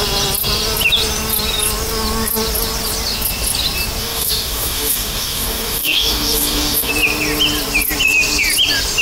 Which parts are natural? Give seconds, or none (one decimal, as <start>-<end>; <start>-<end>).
0.0-4.0; 6.9-9.0